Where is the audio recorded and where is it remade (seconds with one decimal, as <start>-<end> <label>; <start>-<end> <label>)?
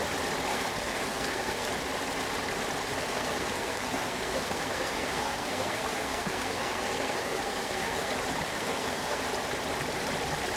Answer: 0.0-0.5 recorded; 0.5-1.7 remade; 1.7-3.0 recorded; 3.0-8.1 remade; 8.1-8.5 recorded; 8.5-9.2 remade; 9.2-10.6 recorded